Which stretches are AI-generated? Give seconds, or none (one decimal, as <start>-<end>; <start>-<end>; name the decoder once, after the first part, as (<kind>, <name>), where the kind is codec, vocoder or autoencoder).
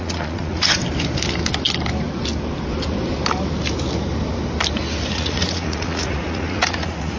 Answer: 0.0-0.8 (vocoder, Vocos); 5.1-7.2